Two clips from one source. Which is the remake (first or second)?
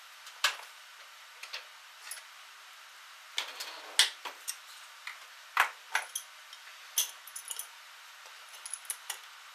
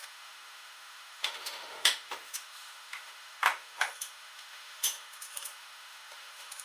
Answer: second